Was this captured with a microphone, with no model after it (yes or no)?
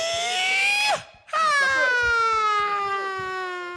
yes